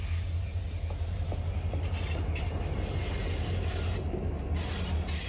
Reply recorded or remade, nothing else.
recorded